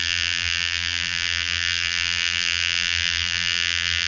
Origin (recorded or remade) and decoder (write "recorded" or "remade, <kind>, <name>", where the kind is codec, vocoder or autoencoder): remade, vocoder, BigVGAN v2